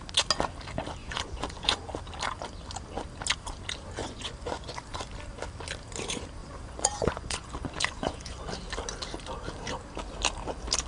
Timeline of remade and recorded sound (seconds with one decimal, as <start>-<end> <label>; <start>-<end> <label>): 0.0-1.0 recorded; 1.0-1.8 remade; 1.8-4.0 recorded; 4.0-5.1 remade; 5.1-6.4 recorded; 6.4-8.4 remade; 8.4-10.9 recorded